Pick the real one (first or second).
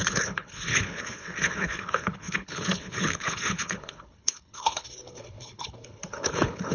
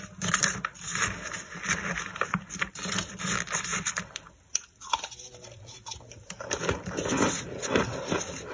second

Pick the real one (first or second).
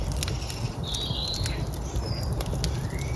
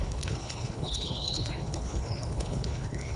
first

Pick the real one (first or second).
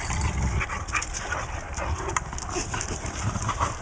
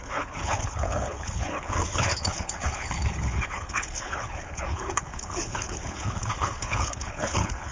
first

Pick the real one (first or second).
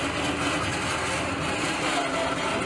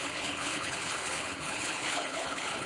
first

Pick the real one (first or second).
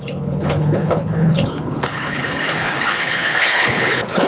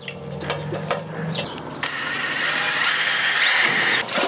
second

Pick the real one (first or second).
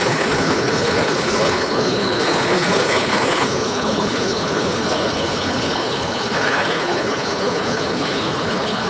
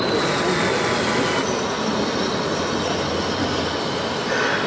second